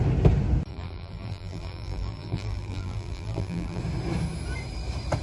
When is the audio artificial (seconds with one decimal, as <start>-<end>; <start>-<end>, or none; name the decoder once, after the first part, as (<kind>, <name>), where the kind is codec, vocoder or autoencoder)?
0.7-3.8 (vocoder, BigVGAN v2)